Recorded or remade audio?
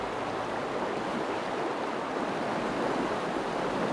recorded